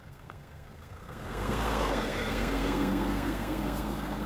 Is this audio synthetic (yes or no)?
yes